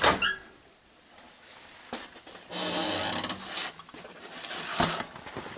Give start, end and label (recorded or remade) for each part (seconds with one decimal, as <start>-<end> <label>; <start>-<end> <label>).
0.0-5.6 recorded